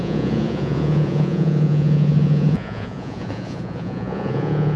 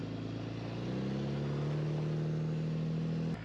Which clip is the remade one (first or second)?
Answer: first